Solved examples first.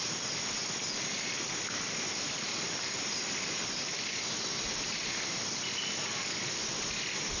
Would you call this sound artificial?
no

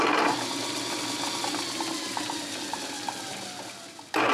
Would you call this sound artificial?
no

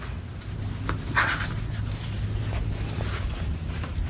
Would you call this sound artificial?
no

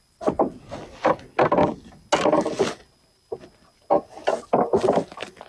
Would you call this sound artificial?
no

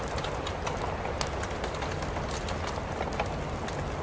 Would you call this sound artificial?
no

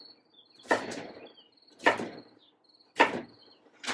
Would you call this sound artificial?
no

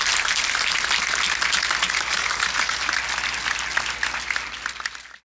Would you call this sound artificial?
no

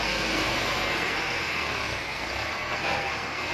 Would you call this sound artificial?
yes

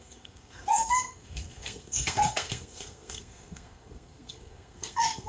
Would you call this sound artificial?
yes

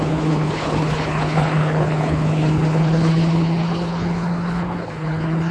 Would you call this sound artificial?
yes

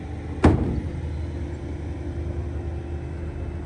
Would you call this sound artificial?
no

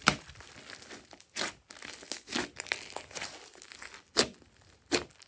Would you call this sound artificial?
no